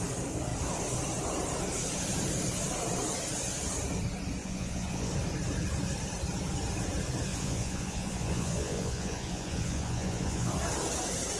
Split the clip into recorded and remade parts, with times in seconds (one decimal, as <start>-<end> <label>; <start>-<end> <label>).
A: 0.0-4.4 recorded; 4.4-5.1 remade; 5.1-7.3 recorded; 7.3-10.5 remade; 10.5-11.4 recorded